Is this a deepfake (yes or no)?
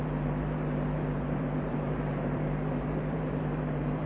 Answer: yes